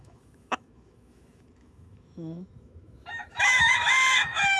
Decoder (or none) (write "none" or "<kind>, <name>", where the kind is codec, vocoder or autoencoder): autoencoder, DAC-VAE